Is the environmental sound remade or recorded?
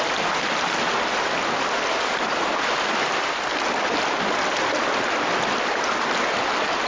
recorded